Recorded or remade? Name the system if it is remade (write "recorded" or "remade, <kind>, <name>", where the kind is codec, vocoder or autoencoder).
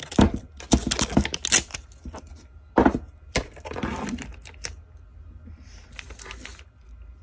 recorded